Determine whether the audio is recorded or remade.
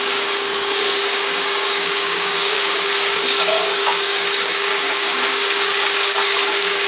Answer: remade